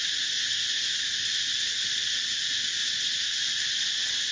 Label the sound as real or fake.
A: real